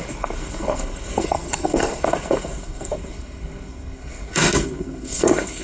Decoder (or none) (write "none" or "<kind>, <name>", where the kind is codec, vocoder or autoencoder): codec, SNAC